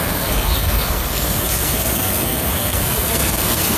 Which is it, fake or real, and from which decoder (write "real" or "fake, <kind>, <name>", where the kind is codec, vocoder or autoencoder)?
fake, codec, SNAC